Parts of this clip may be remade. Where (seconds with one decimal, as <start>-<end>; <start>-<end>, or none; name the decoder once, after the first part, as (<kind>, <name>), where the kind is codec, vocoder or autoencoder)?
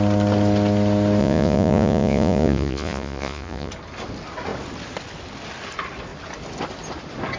1.2-3.7 (vocoder, Vocos)